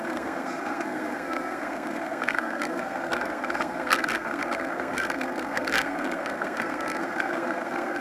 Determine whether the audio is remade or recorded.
remade